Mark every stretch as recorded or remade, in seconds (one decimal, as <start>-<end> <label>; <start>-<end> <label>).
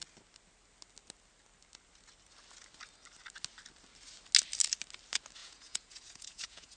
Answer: 0.0-5.4 recorded; 5.4-6.8 remade